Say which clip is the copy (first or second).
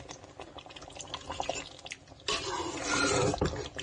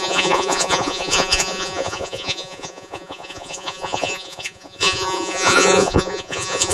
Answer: second